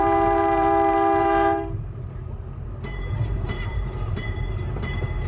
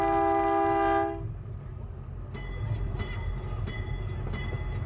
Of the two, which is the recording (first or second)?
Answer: second